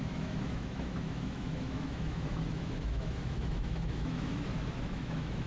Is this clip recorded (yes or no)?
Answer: no